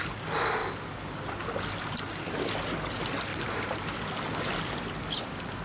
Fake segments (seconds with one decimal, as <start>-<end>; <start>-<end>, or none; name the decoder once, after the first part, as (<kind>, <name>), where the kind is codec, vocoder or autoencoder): none